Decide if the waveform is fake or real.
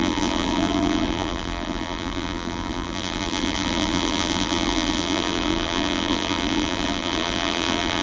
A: fake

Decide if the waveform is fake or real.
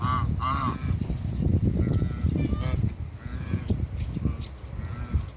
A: real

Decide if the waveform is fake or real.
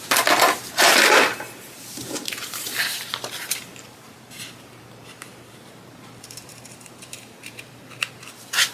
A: fake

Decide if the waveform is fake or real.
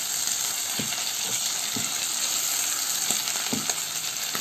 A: real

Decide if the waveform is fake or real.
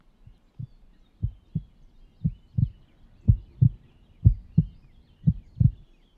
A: real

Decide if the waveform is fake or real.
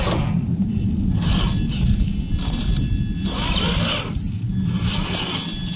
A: real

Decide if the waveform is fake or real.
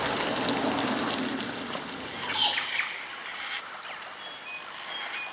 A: real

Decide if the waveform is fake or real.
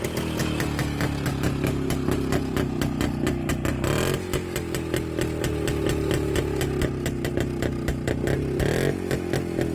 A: real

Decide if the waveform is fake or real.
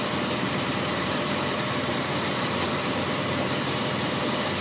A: fake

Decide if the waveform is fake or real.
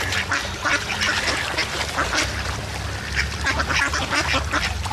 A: fake